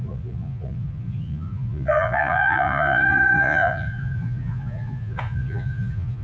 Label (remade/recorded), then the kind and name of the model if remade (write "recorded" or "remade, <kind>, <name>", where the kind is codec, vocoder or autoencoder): remade, vocoder, Vocos